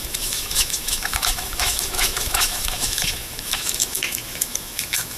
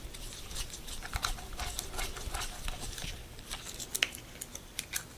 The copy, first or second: first